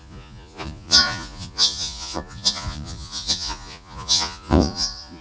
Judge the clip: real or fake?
fake